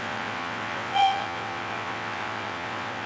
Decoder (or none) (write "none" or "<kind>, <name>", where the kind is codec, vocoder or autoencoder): vocoder, WaveNeXt